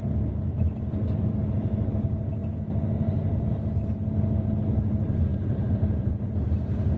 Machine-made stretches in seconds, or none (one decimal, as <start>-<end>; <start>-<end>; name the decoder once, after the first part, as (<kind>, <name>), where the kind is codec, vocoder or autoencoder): 5.3-7.0 (vocoder, BigVGAN v2)